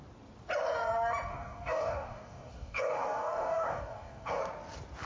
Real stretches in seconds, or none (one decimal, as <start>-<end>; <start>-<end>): 0.0-1.3; 4.4-5.1